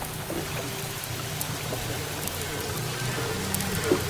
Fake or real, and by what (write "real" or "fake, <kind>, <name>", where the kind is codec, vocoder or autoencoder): real